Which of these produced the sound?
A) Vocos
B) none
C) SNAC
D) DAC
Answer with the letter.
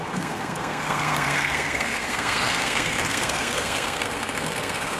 C